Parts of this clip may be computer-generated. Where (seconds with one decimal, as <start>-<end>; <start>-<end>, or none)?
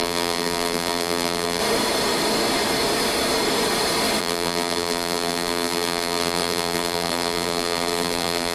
0.0-1.6; 4.2-8.5